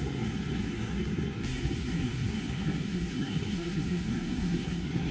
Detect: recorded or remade remade